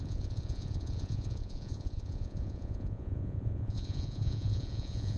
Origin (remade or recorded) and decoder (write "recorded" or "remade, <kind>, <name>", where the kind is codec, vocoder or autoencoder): remade, vocoder, Vocos